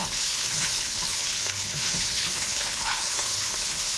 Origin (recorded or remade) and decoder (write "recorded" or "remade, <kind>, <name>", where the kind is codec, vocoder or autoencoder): remade, codec, HILCodec